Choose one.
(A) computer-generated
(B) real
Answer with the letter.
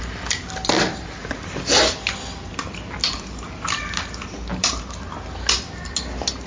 B